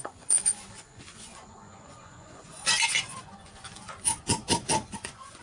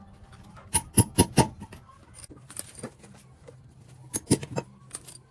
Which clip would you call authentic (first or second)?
second